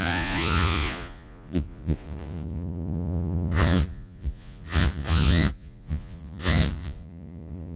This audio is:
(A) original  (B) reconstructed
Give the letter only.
B